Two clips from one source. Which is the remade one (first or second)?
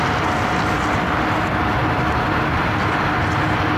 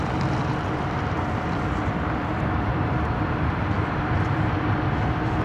second